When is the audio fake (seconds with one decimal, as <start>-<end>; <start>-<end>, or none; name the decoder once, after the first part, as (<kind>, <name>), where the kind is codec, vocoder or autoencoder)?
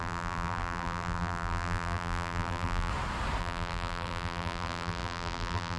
0.0-2.9 (vocoder, BigVGAN v2); 3.4-5.8